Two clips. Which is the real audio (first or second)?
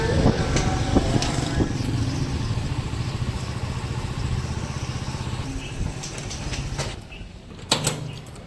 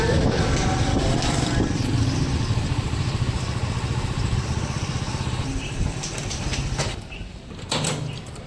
first